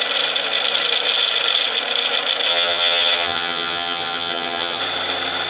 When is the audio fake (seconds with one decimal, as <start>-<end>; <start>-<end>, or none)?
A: 2.5-4.8